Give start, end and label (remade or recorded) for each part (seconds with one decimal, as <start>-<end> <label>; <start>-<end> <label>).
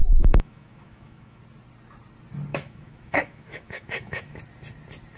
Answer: 0.0-1.4 remade; 1.4-2.5 recorded; 2.5-4.4 remade; 4.4-5.2 recorded